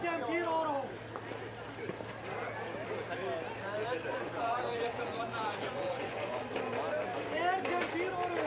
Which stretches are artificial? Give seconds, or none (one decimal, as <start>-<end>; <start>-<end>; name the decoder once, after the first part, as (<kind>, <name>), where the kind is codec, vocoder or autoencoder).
4.1-6.4 (vocoder, Vocos)